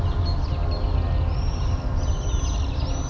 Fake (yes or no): no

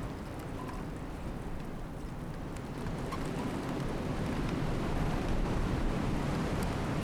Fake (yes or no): yes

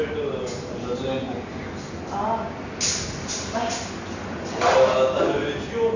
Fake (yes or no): no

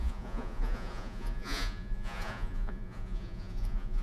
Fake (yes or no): yes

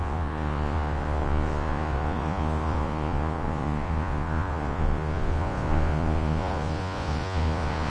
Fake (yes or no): yes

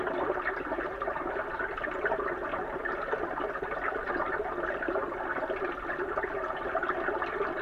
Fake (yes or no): no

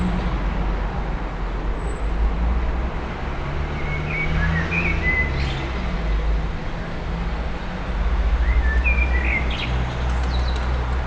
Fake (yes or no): no